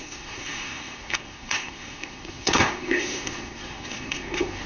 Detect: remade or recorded remade